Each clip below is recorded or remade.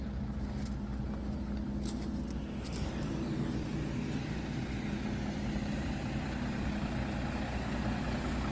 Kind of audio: recorded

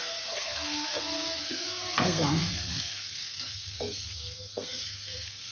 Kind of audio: remade